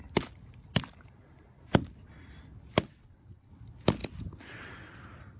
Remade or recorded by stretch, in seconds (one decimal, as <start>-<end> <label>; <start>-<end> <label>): 0.0-2.8 recorded; 2.8-3.5 remade; 3.5-5.4 recorded